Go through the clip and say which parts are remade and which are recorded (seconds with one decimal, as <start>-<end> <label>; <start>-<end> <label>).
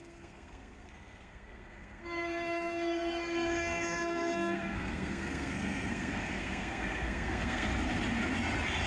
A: 0.0-7.7 remade; 7.7-8.9 recorded